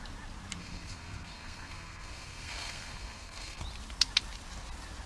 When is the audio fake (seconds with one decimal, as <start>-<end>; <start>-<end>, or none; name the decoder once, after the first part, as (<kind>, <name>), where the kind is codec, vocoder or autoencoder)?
0.6-3.6 (codec, SNAC)